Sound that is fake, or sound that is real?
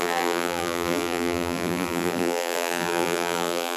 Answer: fake